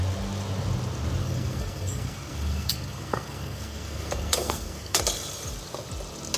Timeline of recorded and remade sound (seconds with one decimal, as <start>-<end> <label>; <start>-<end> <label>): 0.0-1.2 recorded; 1.2-5.0 remade; 5.0-6.4 recorded